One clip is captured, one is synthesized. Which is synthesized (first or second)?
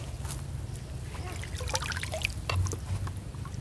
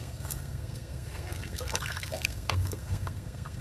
second